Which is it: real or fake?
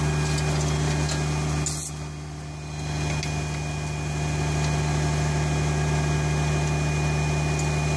real